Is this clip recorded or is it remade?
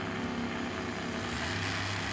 recorded